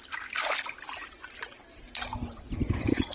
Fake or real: real